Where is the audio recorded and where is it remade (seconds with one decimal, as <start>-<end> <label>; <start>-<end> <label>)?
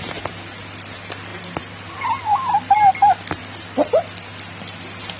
0.0-5.2 recorded